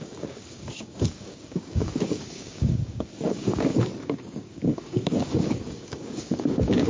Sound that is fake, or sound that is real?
fake